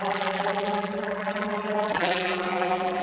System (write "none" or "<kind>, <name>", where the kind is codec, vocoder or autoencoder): vocoder, BigVGAN v2